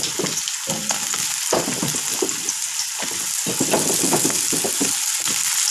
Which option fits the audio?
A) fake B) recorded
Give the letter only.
B